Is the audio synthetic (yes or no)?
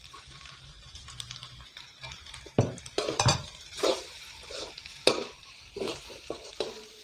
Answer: yes